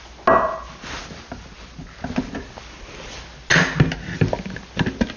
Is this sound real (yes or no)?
yes